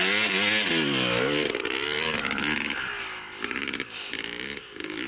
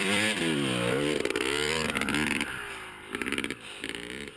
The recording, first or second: first